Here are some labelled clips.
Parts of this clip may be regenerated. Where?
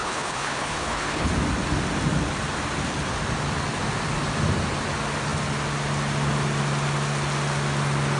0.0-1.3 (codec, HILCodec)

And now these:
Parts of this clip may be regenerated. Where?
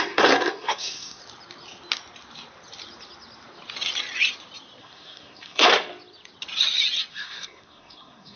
0.0-1.2 (codec, SNAC); 4.8-5.7; 7.1-8.4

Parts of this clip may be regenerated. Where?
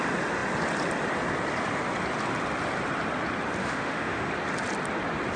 3.6-4.3 (autoencoder, DAC-VAE)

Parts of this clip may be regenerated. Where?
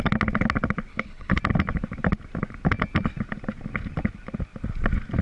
0.9-1.4 (codec, HILCodec)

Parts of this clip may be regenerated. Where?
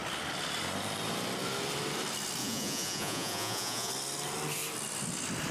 2.4-3.9 (vocoder, Vocos)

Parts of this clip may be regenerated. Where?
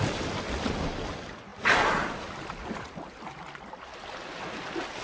none